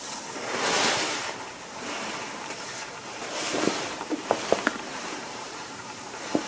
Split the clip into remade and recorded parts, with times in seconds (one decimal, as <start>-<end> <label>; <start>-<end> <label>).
0.0-1.1 recorded; 1.1-3.7 remade; 3.7-4.9 recorded; 4.9-5.9 remade; 5.9-6.5 recorded